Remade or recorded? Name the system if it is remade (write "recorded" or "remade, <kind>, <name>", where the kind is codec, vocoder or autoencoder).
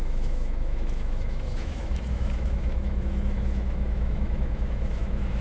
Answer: remade, autoencoder, DAC-VAE